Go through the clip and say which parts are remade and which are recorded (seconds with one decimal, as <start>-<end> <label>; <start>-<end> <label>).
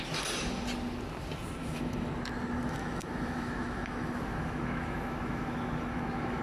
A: 0.0-1.6 recorded; 1.6-2.1 remade; 2.1-2.6 recorded; 2.6-6.4 remade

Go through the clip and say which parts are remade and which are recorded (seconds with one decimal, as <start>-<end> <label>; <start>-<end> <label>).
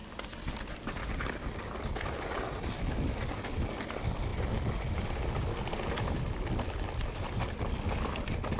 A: 0.0-8.6 recorded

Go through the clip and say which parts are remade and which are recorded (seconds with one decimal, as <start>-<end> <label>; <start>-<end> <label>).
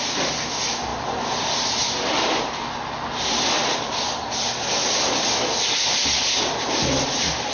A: 0.0-7.5 recorded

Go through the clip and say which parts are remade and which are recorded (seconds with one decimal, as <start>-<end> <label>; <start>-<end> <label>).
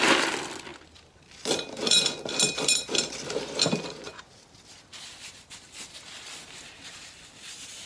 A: 0.0-7.9 recorded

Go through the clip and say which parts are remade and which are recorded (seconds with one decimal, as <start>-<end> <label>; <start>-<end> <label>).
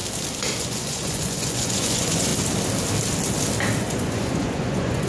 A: 0.0-0.6 recorded; 0.6-2.3 remade; 2.3-3.8 recorded; 3.8-5.1 remade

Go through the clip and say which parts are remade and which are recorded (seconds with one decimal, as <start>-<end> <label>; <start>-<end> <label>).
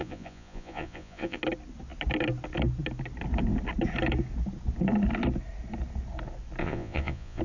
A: 0.0-1.4 remade; 1.4-6.6 recorded; 6.6-7.4 remade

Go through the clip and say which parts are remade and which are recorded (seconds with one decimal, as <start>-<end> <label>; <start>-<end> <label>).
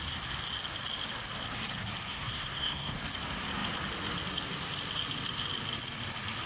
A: 0.0-2.1 recorded; 2.1-3.0 remade; 3.0-6.5 recorded